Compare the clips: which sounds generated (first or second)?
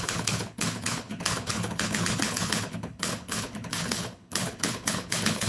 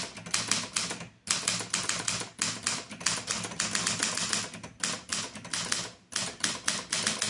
first